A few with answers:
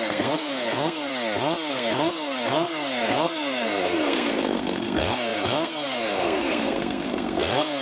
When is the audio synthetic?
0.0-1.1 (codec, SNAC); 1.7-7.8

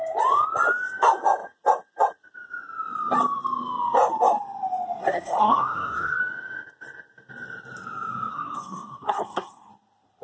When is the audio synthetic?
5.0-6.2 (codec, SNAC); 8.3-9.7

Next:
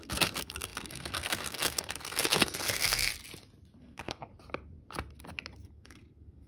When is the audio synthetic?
0.0-3.1 (codec, SNAC); 3.8-4.3; 5.7-6.5

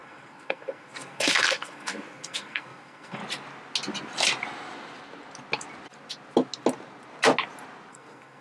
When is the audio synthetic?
0.0-3.2 (codec, SNAC); 7.9-8.4

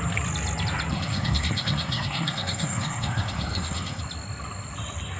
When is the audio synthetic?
0.9-4.0 (codec, SNAC)

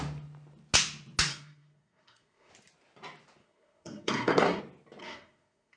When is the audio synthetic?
1.3-2.5 (codec, SNAC); 3.4-4.6; 5.0-5.8

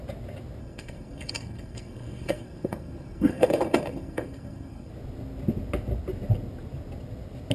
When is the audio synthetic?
0.6-4.9 (codec, SNAC)

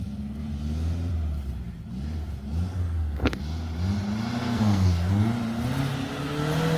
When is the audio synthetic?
2.7-3.4 (codec, SNAC); 4.4-5.1